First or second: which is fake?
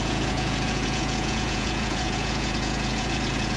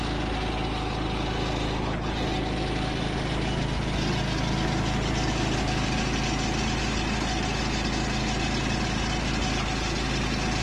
first